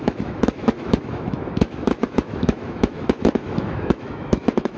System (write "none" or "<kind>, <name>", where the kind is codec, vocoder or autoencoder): autoencoder, DAC-VAE